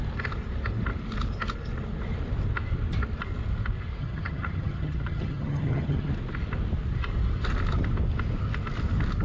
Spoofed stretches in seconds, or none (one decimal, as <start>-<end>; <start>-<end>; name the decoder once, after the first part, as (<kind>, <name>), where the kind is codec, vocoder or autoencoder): 4.0-6.1 (vocoder, HiFi-GAN)